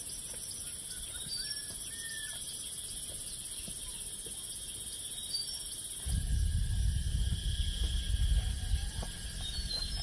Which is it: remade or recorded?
recorded